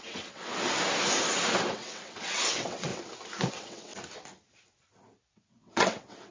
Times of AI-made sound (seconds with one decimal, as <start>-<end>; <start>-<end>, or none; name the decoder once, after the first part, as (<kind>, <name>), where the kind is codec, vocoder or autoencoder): 0.0-0.5 (vocoder, WaveNeXt); 1.7-2.9; 3.5-3.9; 5.3-6.3